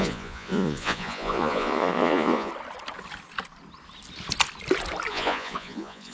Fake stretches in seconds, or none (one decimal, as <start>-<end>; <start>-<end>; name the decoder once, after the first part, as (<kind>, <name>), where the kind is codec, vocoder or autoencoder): 0.0-2.5 (vocoder, Vocos); 5.1-6.1